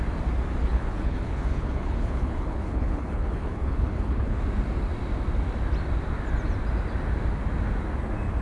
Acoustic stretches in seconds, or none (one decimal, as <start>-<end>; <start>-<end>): 0.0-0.6; 4.4-8.4